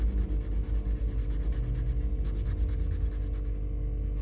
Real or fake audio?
real